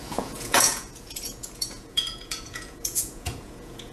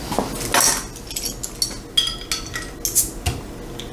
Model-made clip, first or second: first